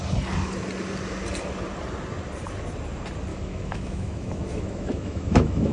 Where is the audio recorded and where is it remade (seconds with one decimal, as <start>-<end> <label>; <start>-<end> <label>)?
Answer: 0.0-3.3 recorded; 3.3-5.7 remade